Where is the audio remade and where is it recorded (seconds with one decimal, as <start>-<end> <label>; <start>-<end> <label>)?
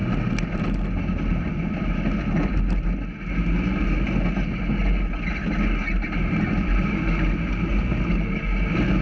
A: 0.0-5.8 recorded; 5.8-7.7 remade; 7.7-9.0 recorded